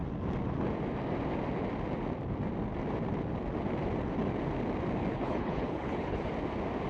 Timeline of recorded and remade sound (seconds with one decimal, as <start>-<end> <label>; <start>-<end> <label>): 0.0-5.1 recorded; 5.1-6.3 remade; 6.3-6.9 recorded